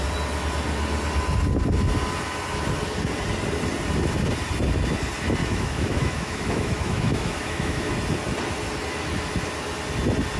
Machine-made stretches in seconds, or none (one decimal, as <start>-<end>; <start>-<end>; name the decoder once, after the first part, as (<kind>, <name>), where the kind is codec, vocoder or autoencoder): 5.4-7.9 (autoencoder, DAC-VAE)

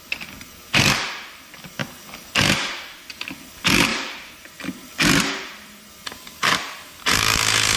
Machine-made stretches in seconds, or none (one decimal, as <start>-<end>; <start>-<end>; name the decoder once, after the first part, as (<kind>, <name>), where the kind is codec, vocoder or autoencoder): 3.9-7.8 (vocoder, BigVGAN v2)

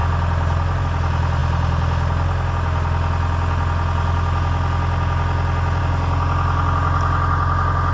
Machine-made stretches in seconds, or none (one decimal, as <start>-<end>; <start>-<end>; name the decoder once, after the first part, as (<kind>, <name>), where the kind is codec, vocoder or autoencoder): none